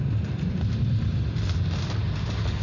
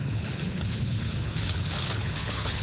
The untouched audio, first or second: first